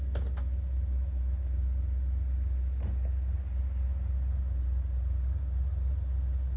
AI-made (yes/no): no